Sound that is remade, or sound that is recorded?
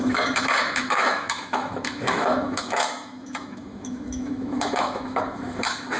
remade